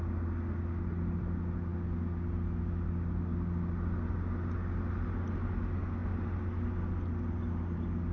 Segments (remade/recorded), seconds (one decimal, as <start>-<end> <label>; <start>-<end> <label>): 0.0-8.1 recorded